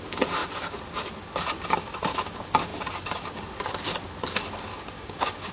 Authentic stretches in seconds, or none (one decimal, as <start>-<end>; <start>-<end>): 0.0-4.7